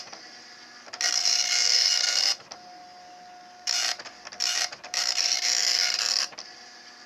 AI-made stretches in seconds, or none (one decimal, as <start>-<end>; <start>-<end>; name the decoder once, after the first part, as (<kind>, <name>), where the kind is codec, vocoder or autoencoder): none